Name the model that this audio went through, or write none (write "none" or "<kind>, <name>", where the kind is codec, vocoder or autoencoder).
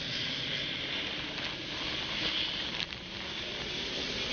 none